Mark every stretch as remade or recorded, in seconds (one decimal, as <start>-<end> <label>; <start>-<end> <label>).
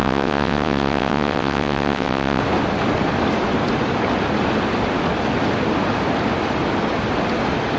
0.0-2.4 remade; 2.4-7.8 recorded